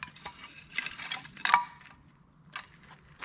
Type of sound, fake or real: real